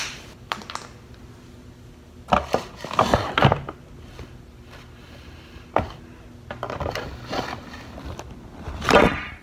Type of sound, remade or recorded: recorded